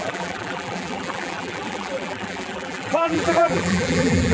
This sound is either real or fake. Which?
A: fake